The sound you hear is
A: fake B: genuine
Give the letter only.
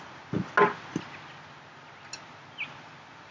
B